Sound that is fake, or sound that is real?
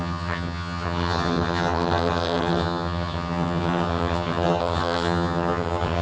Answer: fake